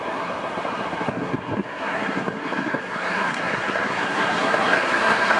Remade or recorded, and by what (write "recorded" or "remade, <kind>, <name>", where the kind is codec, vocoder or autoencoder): remade, codec, SNAC